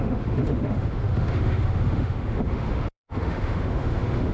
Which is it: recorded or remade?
remade